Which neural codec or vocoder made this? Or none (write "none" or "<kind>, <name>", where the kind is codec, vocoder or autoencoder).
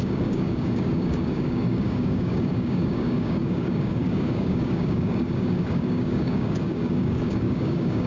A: codec, DAC